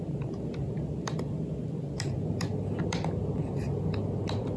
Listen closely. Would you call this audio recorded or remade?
recorded